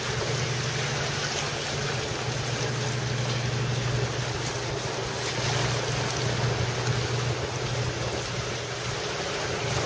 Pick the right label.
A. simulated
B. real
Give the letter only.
B